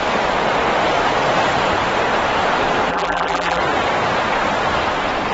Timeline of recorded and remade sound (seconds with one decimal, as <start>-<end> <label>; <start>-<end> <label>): 0.0-2.9 recorded; 2.9-3.6 remade; 3.6-5.3 recorded